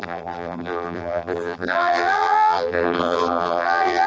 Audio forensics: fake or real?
fake